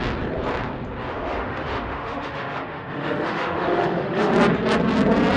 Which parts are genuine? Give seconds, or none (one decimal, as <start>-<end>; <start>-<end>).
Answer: 0.0-1.1; 4.3-5.4